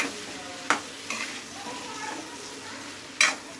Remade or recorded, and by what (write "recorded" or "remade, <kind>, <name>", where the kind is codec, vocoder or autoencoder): recorded